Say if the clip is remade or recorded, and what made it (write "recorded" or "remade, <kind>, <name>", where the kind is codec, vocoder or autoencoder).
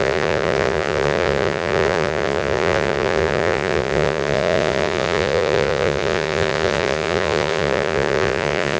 remade, vocoder, Vocos